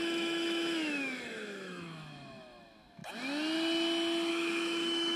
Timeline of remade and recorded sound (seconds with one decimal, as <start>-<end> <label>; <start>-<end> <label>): 0.0-3.0 remade; 3.0-4.3 recorded; 4.3-5.2 remade